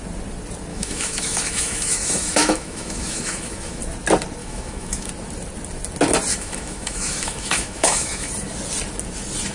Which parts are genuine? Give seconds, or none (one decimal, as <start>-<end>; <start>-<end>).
0.0-0.7; 3.8-4.4; 5.1-6.3; 8.3-9.5